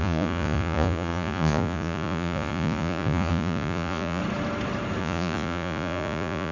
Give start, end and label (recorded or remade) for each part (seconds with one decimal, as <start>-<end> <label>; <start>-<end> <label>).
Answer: 0.0-4.2 remade; 4.2-5.0 recorded; 5.0-6.5 remade